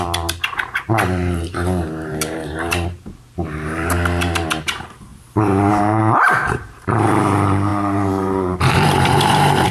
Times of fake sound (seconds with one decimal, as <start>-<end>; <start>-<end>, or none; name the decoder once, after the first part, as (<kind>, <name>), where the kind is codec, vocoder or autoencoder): 0.0-5.1 (vocoder, BigVGAN v2); 5.7-9.7